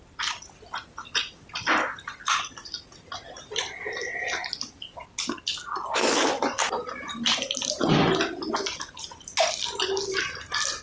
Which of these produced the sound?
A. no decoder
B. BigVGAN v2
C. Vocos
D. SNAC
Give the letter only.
A